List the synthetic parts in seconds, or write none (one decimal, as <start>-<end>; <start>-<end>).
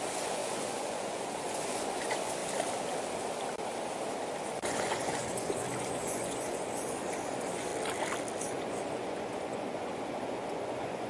0.0-2.4; 4.4-7.7; 8.4-11.1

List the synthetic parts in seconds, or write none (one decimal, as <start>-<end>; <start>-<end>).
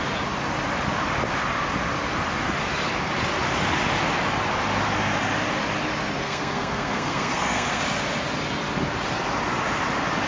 6.2-7.8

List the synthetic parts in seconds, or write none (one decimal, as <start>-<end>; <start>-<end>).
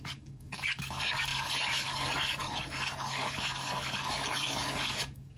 0.0-5.4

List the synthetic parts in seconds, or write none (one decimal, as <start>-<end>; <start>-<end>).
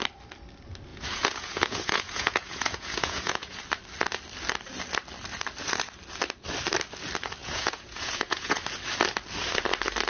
0.9-3.6; 7.4-8.6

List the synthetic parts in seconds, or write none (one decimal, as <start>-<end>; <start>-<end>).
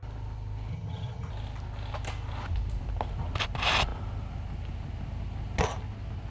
0.7-1.3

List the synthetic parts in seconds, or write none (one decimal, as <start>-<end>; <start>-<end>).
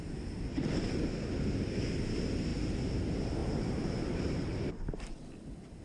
2.5-3.0; 3.4-4.7